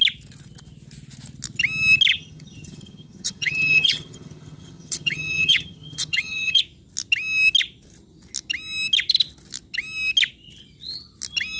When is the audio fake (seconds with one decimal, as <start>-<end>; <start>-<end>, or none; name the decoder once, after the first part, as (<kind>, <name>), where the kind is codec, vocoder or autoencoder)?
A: 2.1-6.6 (vocoder, HiFi-GAN)